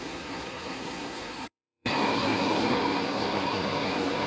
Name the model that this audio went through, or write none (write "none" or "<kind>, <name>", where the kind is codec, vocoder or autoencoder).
codec, SNAC